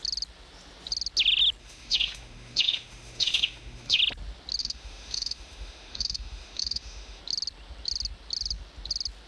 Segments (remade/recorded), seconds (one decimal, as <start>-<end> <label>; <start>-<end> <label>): 0.0-1.6 recorded; 1.6-4.0 remade; 4.0-4.6 recorded; 4.6-7.2 remade; 7.2-9.3 recorded